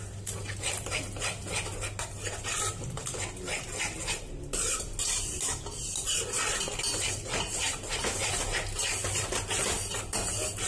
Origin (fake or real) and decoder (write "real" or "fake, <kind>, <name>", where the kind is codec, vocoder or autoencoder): real